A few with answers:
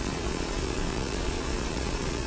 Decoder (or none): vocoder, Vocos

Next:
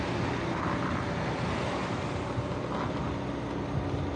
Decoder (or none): none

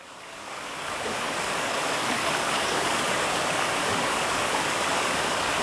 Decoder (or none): codec, DAC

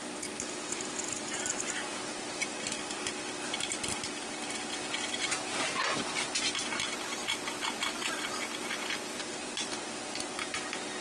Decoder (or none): none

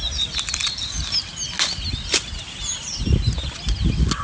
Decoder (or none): none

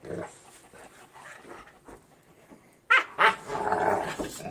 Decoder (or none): none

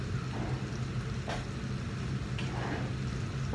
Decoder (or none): none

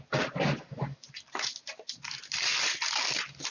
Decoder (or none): none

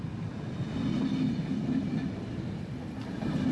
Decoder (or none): none